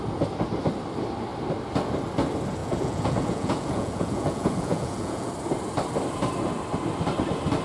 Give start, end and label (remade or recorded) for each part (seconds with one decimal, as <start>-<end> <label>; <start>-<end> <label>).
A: 0.0-2.6 recorded; 2.6-5.3 remade; 5.3-7.6 recorded